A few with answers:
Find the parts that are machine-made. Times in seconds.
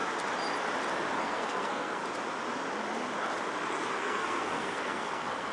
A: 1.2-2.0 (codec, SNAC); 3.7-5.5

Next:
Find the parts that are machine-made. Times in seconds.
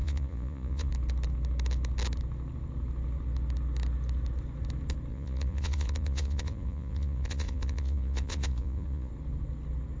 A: 0.0-0.9 (vocoder, Vocos); 5.1-9.1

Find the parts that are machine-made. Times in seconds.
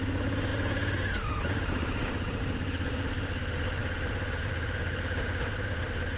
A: none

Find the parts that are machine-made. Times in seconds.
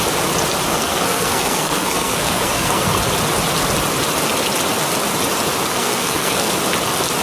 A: 0.7-3.0 (codec, SNAC); 5.7-6.5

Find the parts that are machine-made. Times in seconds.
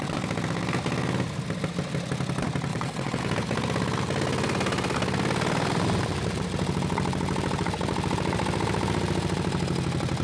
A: 2.7-3.2 (vocoder, WaveNeXt)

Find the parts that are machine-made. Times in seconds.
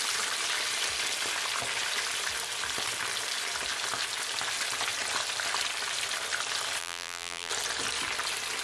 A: 6.8-7.5 (vocoder, BigVGAN v2)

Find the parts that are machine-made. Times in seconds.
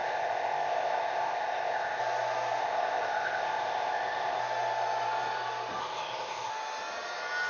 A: 0.0-2.0 (codec, ZipCodec); 2.6-4.4; 5.8-6.5